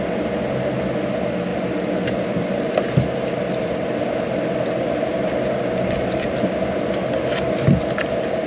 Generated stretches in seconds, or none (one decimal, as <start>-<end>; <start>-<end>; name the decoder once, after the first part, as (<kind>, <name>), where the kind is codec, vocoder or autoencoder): none